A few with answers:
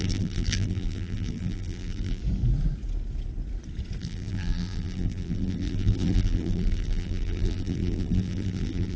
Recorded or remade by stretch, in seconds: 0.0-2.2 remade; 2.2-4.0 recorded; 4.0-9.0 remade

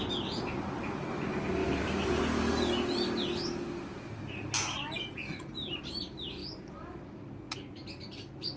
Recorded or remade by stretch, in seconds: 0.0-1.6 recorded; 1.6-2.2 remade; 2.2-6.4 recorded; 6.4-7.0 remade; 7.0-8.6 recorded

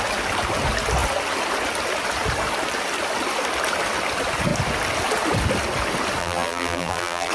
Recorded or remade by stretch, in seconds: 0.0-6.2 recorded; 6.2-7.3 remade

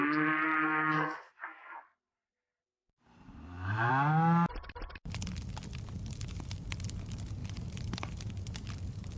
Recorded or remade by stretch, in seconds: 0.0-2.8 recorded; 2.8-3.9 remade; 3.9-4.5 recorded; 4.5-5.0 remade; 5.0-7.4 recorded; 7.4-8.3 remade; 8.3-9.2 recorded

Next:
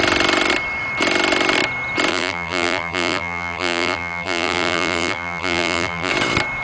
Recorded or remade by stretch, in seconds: 0.0-2.1 recorded; 2.1-6.1 remade; 6.1-6.6 recorded

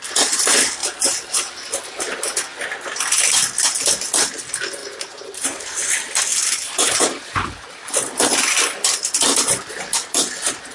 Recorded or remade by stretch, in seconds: 0.0-0.8 recorded; 0.8-1.5 remade; 1.5-4.8 recorded; 4.8-5.7 remade; 5.7-6.3 recorded; 6.3-7.9 remade; 7.9-10.7 recorded

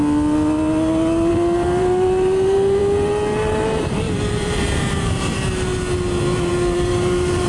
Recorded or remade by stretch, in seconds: 0.0-1.3 recorded; 1.3-2.8 remade; 2.8-3.4 recorded; 3.4-5.7 remade; 5.7-6.5 recorded; 6.5-7.5 remade

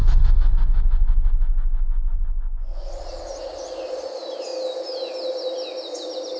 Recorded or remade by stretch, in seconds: 0.0-6.4 recorded